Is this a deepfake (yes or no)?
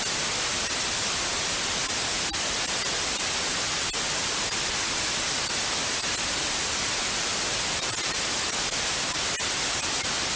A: no